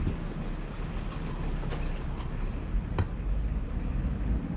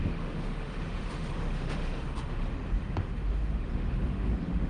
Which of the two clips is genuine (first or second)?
first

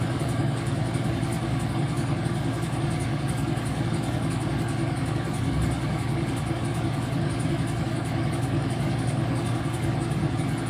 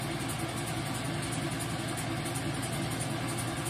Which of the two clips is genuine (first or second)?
second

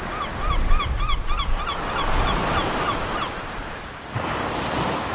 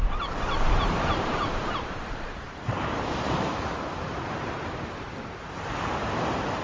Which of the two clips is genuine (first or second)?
first